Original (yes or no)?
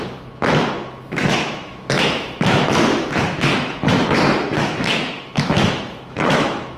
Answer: no